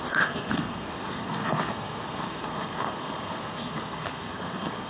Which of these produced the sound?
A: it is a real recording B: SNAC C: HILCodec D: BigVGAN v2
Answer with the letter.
B